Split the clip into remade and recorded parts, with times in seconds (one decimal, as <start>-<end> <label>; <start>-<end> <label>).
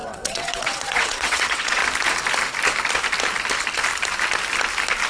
0.0-1.8 remade; 1.8-5.1 recorded